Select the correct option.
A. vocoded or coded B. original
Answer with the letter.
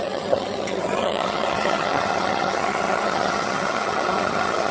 A